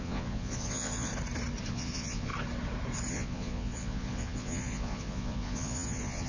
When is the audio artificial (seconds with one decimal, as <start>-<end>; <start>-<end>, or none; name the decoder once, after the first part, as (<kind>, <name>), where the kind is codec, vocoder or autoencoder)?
0.0-1.1 (vocoder, Vocos); 1.7-2.3; 3.1-6.3